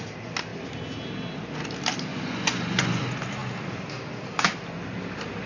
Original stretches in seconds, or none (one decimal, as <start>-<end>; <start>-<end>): 0.0-2.1; 3.0-5.5